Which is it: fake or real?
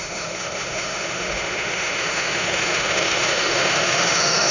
fake